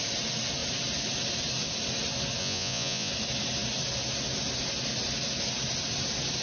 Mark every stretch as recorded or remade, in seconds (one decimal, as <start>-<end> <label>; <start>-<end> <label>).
0.0-2.4 recorded; 2.4-3.1 remade; 3.1-6.4 recorded